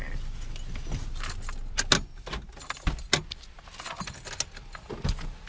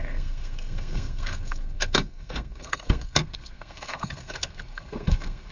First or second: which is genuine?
first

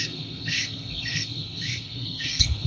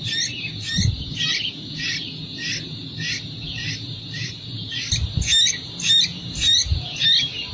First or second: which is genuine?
second